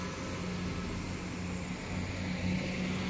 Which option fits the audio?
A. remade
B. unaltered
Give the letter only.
B